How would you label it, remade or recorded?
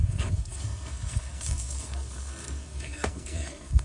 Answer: remade